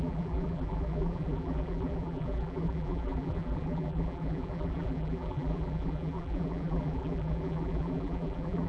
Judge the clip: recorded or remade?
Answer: remade